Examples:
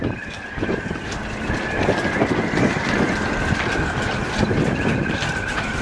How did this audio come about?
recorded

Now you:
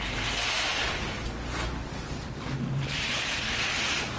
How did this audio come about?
recorded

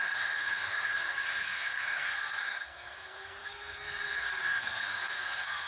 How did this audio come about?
remade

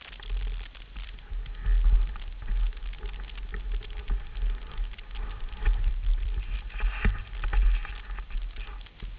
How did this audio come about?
recorded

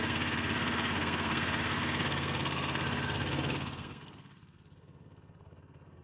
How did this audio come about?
remade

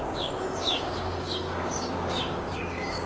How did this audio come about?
remade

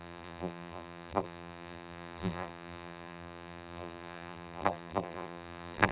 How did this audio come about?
remade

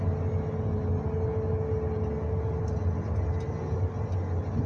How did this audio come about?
recorded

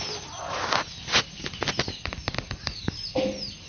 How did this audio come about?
recorded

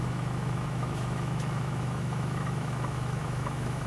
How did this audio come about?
remade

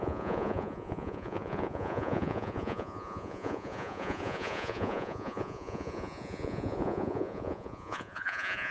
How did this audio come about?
remade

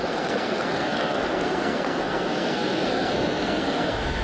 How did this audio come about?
remade